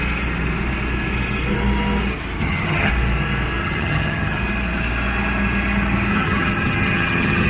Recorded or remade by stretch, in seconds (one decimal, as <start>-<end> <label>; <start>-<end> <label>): 0.0-2.4 recorded; 2.4-2.9 remade; 2.9-3.6 recorded; 3.6-4.4 remade; 4.4-6.1 recorded; 6.1-7.5 remade

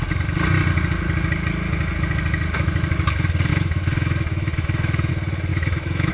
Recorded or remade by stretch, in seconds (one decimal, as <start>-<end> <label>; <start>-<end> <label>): 0.0-3.5 recorded; 3.5-5.1 remade; 5.1-5.5 recorded; 5.5-6.1 remade

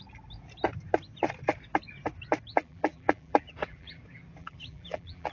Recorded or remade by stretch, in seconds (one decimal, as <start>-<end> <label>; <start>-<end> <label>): 0.0-2.5 recorded; 2.5-4.0 remade; 4.0-4.4 recorded; 4.4-5.3 remade

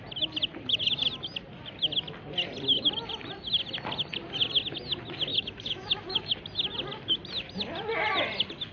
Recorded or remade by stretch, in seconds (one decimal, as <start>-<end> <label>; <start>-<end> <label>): 0.0-5.3 recorded; 5.3-6.3 remade; 6.3-8.7 recorded

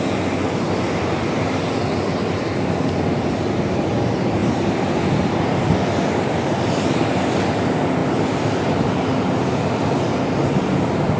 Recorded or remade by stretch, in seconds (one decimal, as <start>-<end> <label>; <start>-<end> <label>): 0.0-11.2 recorded

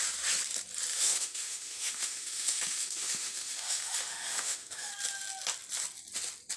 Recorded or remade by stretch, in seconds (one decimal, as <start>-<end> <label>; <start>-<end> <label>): 0.0-0.9 recorded; 0.9-4.9 remade; 4.9-6.6 recorded